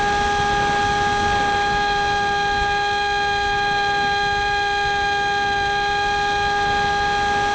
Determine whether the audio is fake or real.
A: real